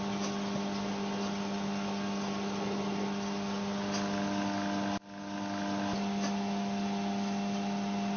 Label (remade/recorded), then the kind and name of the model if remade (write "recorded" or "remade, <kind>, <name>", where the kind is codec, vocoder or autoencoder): recorded